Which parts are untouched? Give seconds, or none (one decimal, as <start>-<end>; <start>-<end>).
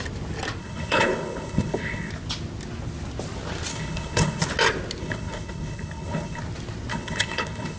0.0-0.6; 2.1-3.7; 4.4-5.0; 6.4-6.9